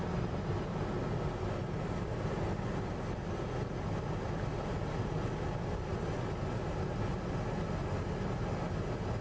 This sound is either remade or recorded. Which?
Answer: recorded